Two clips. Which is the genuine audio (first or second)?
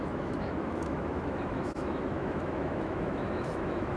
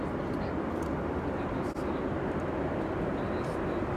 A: second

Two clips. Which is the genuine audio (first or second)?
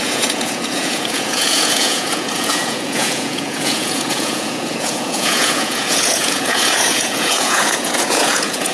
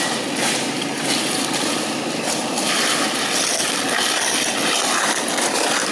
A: second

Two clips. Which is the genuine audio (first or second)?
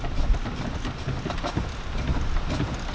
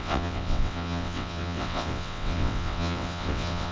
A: first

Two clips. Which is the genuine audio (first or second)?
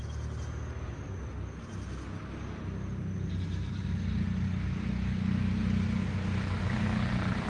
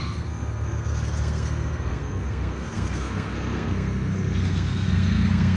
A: first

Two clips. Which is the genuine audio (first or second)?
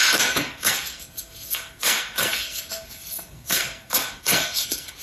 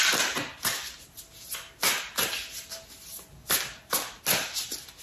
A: second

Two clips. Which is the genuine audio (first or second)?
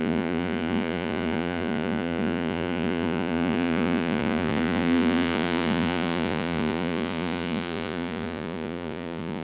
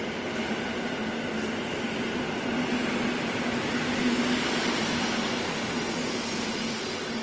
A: second